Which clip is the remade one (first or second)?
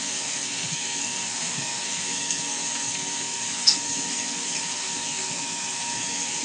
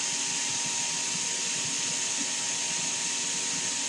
first